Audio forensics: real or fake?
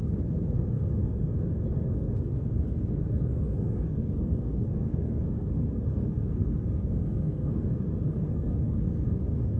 fake